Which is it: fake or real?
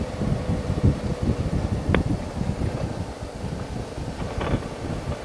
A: real